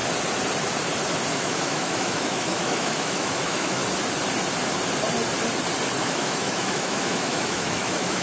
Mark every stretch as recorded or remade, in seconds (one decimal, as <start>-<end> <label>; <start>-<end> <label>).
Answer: 0.0-1.3 recorded; 1.3-3.8 remade; 3.8-6.0 recorded; 6.0-8.2 remade